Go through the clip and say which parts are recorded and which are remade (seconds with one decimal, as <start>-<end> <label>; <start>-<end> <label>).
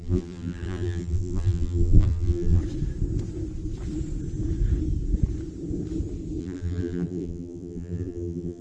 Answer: 0.0-2.6 remade; 2.6-6.4 recorded; 6.4-8.6 remade